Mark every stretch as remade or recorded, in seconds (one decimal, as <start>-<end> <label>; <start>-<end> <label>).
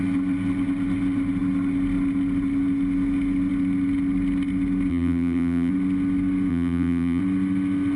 0.0-4.9 recorded; 4.9-5.7 remade; 5.7-6.5 recorded; 6.5-7.2 remade; 7.2-8.0 recorded